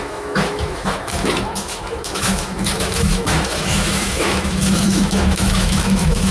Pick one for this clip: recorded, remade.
remade